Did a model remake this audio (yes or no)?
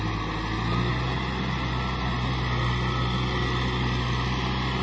no